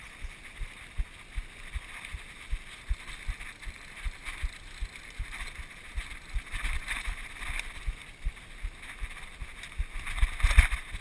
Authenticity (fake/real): real